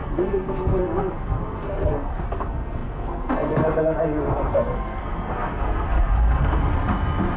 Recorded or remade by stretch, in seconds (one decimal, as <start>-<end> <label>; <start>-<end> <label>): 0.0-6.6 remade; 6.6-7.4 recorded